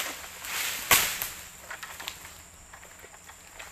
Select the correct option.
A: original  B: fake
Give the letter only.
A